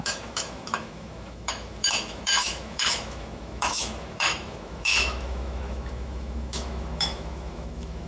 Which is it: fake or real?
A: fake